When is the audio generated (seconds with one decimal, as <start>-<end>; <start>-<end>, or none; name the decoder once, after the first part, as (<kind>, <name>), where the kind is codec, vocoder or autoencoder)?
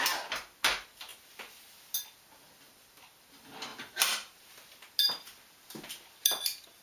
none